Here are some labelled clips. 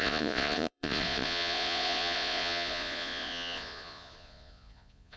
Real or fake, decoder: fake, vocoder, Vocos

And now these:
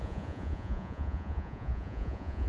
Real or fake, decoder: fake, vocoder, Vocos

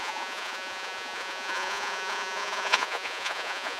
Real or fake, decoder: fake, vocoder, Vocos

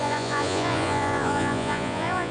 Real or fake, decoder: fake, vocoder, Vocos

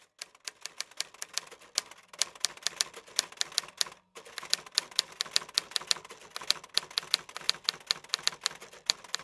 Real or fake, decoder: real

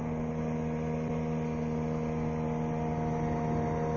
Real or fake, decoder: real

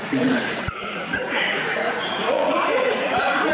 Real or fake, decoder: fake, vocoder, Vocos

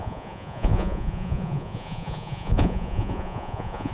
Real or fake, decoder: fake, vocoder, Vocos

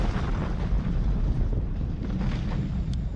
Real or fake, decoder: real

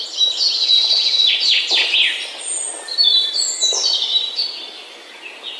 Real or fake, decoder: real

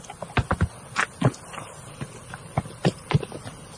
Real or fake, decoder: real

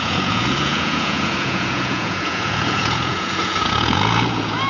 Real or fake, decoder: fake, vocoder, Vocos